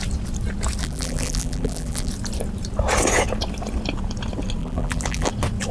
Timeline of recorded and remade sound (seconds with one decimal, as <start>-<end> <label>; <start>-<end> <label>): 0.0-0.8 recorded; 0.8-2.1 remade; 2.1-4.6 recorded; 4.6-5.3 remade; 5.3-5.7 recorded